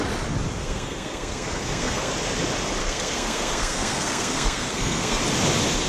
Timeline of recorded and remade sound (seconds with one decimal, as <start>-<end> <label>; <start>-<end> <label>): 0.0-0.6 recorded; 0.6-2.1 remade; 2.1-2.8 recorded; 2.8-5.2 remade; 5.2-5.9 recorded